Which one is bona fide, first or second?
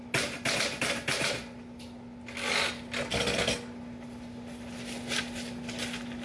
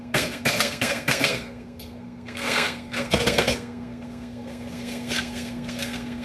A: first